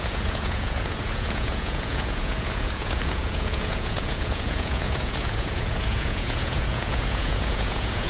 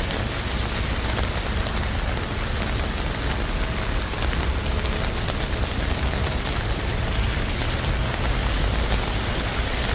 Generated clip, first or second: first